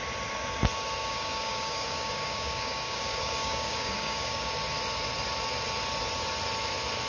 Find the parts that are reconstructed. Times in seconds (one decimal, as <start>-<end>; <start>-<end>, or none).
1.0-4.5